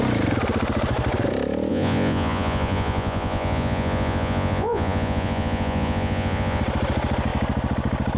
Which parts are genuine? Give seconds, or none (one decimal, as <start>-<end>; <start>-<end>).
0.0-1.7; 6.6-8.2